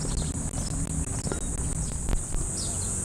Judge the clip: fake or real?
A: real